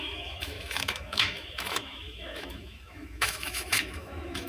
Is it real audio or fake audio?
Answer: fake